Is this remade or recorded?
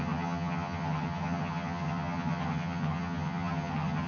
remade